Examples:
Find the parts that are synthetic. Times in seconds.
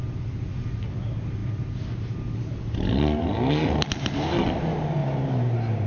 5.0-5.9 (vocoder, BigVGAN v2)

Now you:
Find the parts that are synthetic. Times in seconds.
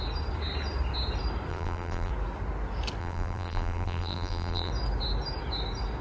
1.5-2.1 (vocoder, BigVGAN v2); 3.0-4.7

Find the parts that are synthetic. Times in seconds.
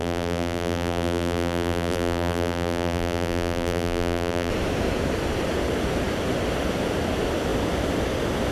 0.0-4.5 (vocoder, BigVGAN v2)